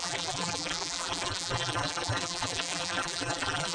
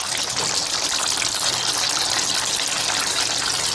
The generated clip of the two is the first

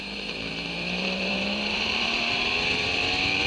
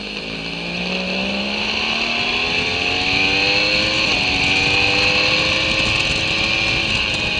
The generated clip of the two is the first